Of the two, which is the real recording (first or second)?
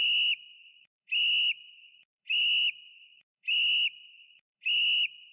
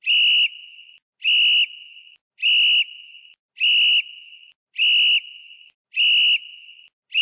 second